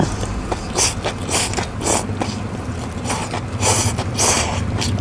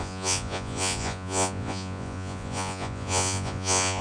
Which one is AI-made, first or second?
second